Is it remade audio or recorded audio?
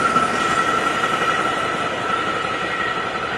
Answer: recorded